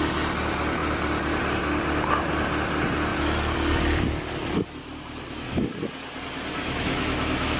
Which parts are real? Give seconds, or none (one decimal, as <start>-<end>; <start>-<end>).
0.0-6.6